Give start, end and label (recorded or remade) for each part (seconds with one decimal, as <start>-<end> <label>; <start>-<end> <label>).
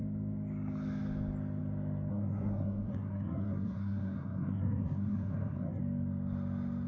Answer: 0.0-2.1 recorded; 2.1-5.8 remade; 5.8-6.9 recorded